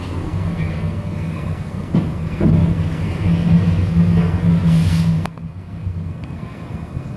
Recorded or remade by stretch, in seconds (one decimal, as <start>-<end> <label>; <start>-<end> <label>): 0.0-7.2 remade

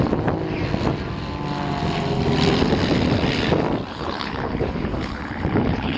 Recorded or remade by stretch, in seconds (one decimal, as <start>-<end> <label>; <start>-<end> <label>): 0.0-3.9 recorded; 3.9-6.0 remade

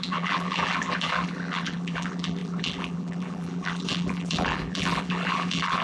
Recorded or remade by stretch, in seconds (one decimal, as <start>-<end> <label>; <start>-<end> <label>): 0.0-5.8 remade

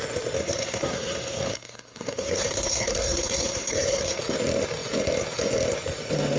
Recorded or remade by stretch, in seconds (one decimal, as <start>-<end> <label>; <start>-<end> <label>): 0.0-0.4 recorded; 0.4-4.2 remade; 4.2-6.4 recorded

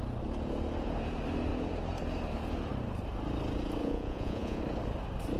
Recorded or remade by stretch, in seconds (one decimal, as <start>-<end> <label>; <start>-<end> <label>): 0.0-3.8 recorded; 3.8-4.6 remade; 4.6-5.4 recorded

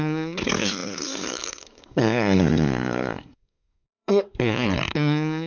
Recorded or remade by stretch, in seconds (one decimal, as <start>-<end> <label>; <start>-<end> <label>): 0.0-5.5 remade

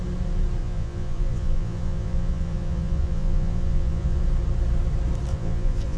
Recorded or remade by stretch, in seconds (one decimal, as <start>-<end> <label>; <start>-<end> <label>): 0.0-0.6 recorded; 0.6-4.2 remade; 4.2-5.3 recorded; 5.3-6.0 remade